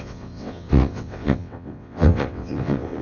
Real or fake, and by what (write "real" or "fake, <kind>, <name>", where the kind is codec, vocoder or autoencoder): fake, vocoder, WaveNeXt